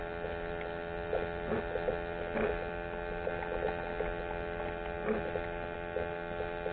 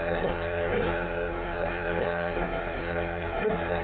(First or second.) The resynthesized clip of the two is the second